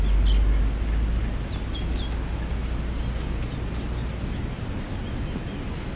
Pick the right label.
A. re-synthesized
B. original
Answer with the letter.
B